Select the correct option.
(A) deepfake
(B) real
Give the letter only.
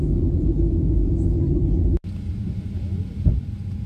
B